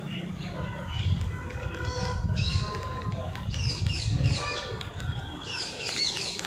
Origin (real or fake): fake